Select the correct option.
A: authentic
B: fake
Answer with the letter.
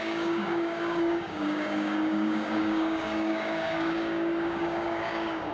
B